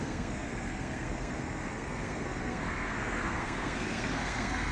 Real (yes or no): no